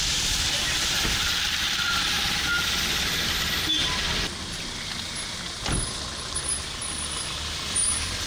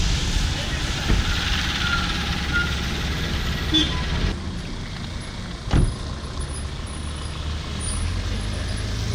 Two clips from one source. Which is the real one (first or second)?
second